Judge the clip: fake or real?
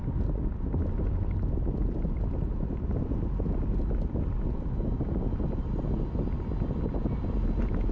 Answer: real